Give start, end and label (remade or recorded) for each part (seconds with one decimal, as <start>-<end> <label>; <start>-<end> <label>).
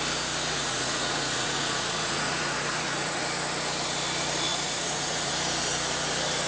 0.0-0.5 recorded; 0.5-3.2 remade; 3.2-4.5 recorded; 4.5-5.3 remade; 5.3-6.5 recorded